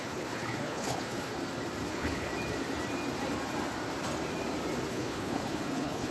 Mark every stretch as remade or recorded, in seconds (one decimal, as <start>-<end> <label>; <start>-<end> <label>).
0.0-1.3 remade; 1.3-1.9 recorded; 1.9-2.3 remade; 2.3-4.9 recorded; 4.9-6.1 remade

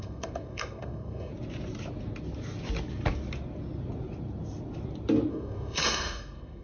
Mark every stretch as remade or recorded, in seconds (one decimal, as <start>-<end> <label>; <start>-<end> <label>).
0.0-1.3 remade; 1.3-5.3 recorded; 5.3-6.6 remade

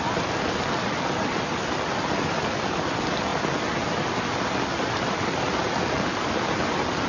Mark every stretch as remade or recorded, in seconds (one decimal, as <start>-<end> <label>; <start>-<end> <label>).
0.0-7.1 recorded

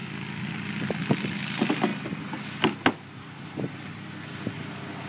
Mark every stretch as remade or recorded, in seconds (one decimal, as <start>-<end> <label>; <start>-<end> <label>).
0.0-5.1 recorded

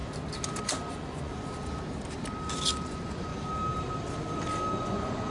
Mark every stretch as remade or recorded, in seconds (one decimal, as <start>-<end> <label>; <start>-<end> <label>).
0.0-0.8 recorded; 0.8-1.3 remade; 1.3-2.8 recorded; 2.8-3.3 remade; 3.3-4.8 recorded; 4.8-5.3 remade

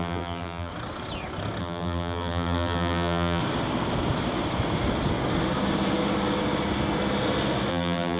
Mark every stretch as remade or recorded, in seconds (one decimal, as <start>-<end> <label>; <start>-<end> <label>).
0.0-0.7 remade; 0.7-1.6 recorded; 1.6-3.4 remade; 3.4-7.7 recorded; 7.7-8.2 remade